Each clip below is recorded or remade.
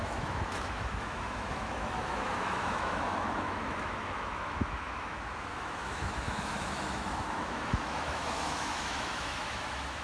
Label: remade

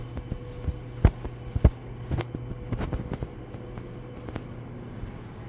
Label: recorded